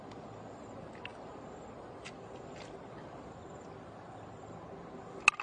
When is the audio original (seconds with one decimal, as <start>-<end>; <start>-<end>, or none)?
0.0-5.4